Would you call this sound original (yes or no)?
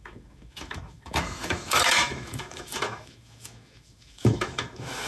no